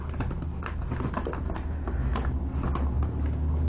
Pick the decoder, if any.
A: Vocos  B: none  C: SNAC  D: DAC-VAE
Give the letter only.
B